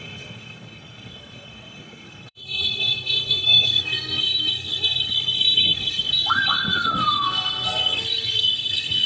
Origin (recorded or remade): remade